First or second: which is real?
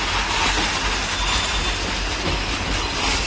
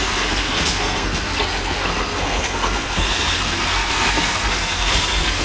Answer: first